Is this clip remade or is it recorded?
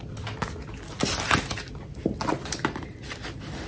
recorded